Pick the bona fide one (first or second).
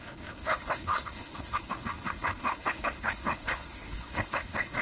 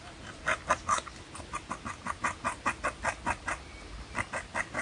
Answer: second